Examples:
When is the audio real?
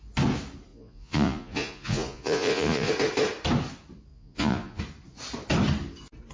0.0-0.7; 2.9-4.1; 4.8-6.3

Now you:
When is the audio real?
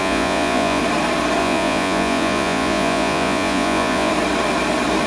0.8-1.4; 4.1-5.1